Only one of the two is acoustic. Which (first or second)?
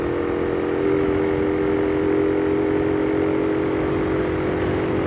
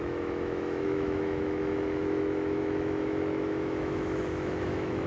first